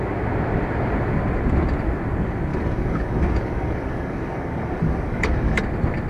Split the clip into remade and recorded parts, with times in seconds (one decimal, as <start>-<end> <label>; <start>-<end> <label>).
0.0-2.5 recorded; 2.5-5.6 remade; 5.6-6.1 recorded